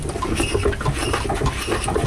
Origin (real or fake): real